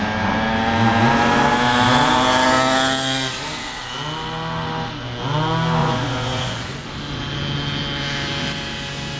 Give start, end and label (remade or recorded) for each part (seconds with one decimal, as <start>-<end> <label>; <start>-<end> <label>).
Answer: 0.0-5.8 recorded; 5.8-6.9 remade; 6.9-9.2 recorded